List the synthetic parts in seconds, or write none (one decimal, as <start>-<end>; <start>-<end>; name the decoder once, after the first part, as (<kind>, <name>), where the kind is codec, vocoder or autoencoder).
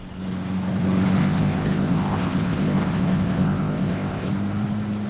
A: 1.2-4.3 (codec, ZipCodec)